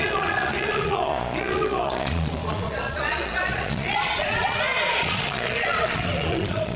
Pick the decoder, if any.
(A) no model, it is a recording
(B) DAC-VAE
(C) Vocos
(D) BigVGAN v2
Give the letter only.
C